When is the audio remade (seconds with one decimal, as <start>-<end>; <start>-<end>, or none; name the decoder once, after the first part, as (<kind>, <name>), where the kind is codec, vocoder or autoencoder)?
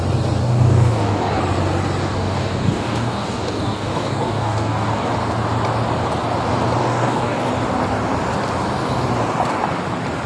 0.4-1.4 (codec, DAC); 2.0-5.1; 6.8-7.5